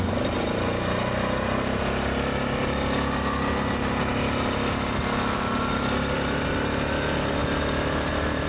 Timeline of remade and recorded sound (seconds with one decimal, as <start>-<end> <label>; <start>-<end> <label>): 0.0-8.5 recorded